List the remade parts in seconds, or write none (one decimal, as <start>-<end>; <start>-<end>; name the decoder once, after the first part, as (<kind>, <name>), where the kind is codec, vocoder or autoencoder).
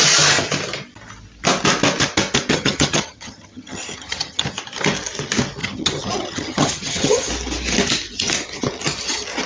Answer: 2.5-4.4 (vocoder, HiFi-GAN); 5.6-7.3